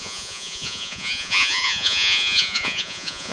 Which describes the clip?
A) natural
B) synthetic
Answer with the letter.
B